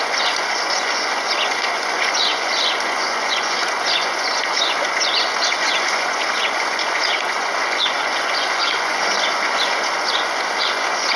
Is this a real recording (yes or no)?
no